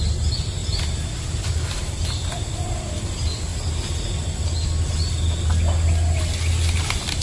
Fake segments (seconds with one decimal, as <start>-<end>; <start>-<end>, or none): none